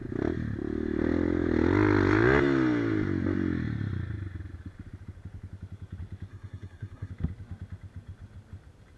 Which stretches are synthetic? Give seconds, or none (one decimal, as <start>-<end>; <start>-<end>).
6.3-7.1

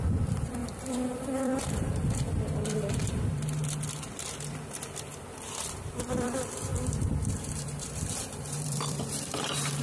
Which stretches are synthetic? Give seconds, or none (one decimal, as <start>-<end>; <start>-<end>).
0.0-6.7; 7.3-9.8

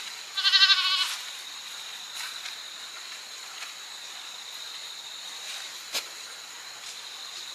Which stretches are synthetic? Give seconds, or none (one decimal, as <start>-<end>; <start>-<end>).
none

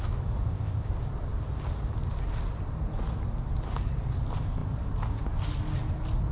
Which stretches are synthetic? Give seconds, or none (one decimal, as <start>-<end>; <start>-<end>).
0.4-0.9

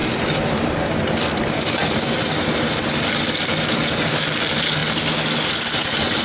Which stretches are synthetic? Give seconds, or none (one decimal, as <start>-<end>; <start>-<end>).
none

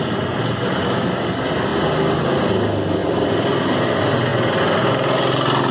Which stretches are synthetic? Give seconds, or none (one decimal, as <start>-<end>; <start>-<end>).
3.0-3.6

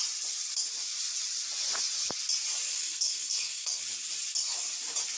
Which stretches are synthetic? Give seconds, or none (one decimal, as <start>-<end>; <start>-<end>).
2.7-3.8